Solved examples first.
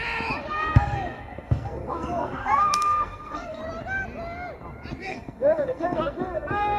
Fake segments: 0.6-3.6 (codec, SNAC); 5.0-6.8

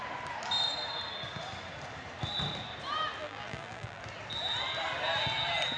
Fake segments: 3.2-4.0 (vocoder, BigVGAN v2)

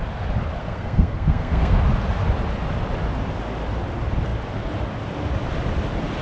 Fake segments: 0.6-1.8 (codec, SNAC)

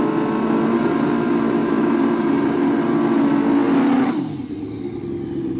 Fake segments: 1.6-2.9 (vocoder, BigVGAN v2)

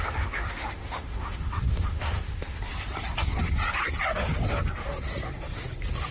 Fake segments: 0.0-2.7 (autoencoder, DAC-VAE)

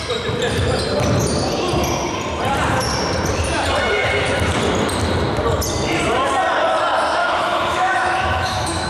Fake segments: 7.2-8.9 (autoencoder, DAC-VAE)